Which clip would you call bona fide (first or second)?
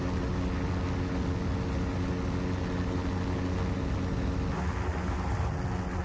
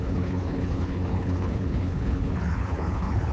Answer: first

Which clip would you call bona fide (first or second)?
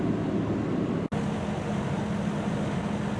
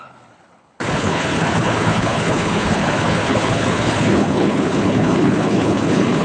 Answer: first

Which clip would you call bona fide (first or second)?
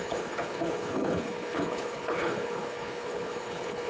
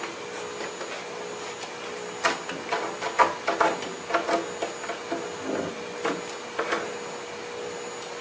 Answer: second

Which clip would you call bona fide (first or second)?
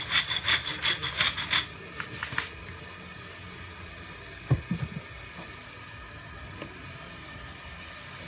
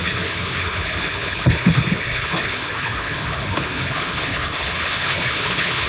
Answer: first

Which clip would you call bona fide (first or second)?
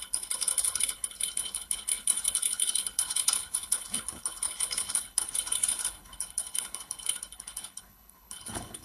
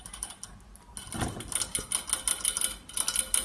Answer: second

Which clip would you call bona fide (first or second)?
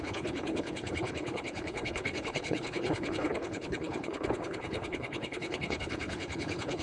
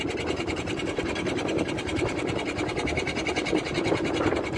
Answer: second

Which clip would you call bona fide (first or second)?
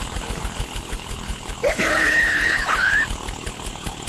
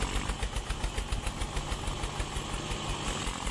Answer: second